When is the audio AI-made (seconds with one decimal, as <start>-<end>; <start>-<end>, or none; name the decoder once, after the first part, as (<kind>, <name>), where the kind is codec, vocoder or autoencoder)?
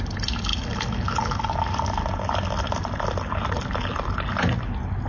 none